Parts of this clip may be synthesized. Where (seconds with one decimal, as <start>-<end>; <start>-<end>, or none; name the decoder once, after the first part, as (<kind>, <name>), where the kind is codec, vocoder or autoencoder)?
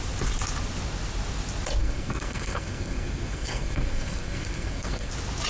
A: 1.8-5.1 (codec, SNAC)